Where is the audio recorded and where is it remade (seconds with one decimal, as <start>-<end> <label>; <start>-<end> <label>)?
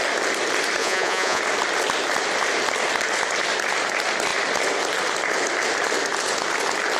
0.0-0.8 recorded; 0.8-1.4 remade; 1.4-7.0 recorded